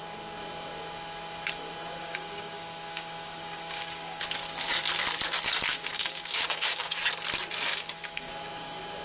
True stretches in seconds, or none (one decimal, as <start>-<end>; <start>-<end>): 0.0-2.0; 4.2-5.7; 7.0-7.7; 8.3-9.0